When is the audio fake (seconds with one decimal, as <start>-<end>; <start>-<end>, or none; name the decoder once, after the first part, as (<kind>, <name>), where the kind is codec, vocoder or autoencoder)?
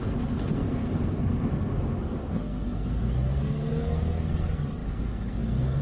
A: 0.0-5.8 (codec, SNAC)